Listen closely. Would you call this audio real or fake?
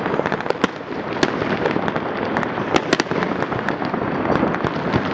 real